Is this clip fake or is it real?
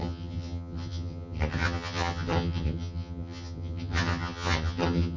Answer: fake